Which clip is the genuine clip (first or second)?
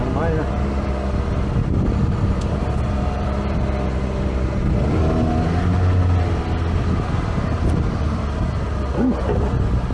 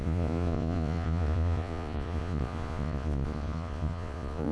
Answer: first